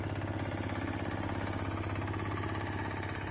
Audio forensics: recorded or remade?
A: recorded